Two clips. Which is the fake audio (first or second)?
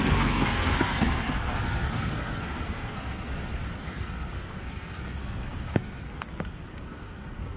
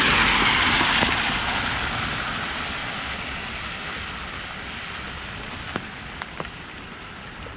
first